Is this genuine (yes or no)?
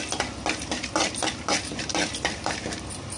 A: yes